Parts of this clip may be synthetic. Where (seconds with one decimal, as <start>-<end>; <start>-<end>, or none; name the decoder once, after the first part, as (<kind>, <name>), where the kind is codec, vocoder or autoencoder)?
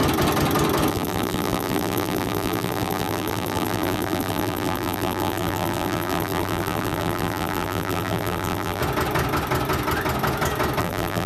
0.9-8.8 (vocoder, BigVGAN v2); 10.8-11.3